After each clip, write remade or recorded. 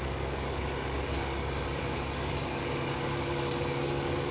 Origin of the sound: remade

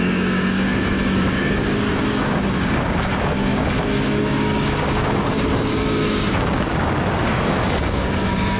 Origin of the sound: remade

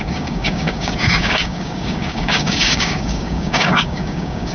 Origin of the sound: remade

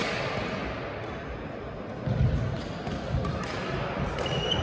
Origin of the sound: recorded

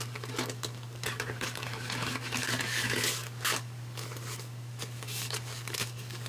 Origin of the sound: remade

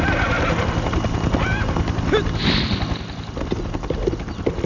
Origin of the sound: recorded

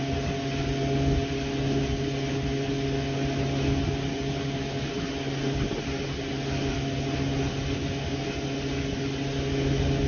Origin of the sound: recorded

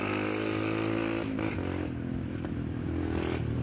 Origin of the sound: recorded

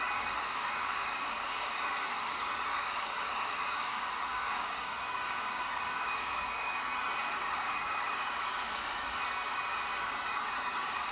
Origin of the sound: remade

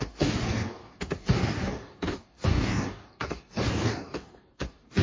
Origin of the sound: remade